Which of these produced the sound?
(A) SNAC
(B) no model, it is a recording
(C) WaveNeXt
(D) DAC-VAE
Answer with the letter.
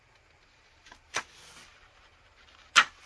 B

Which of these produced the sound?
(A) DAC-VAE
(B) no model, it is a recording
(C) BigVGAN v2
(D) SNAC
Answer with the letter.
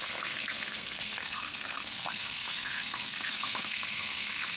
D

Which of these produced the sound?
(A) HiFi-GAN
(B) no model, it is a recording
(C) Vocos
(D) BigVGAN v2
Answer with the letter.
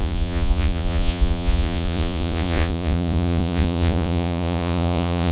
C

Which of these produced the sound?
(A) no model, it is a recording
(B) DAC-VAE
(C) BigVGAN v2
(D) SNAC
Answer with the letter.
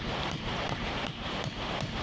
C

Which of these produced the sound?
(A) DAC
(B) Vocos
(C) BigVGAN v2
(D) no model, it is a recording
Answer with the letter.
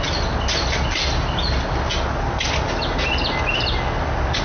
D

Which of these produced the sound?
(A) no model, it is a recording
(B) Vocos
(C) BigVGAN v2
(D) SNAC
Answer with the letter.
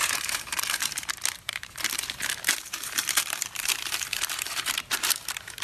C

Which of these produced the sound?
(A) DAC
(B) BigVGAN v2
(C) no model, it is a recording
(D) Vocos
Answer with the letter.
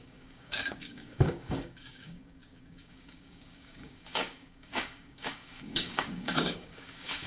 A